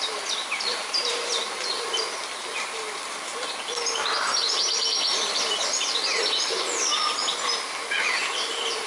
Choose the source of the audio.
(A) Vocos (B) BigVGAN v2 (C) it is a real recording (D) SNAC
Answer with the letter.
B